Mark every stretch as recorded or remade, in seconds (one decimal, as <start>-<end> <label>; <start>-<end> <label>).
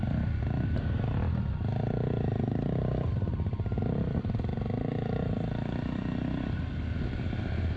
0.0-7.8 recorded